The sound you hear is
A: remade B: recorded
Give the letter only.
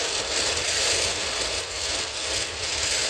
B